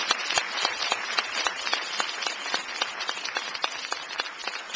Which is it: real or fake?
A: real